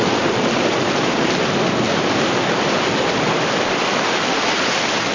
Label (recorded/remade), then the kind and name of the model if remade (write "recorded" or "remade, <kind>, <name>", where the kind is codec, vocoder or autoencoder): recorded